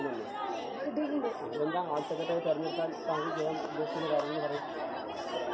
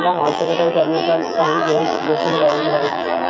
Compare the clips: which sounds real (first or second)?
first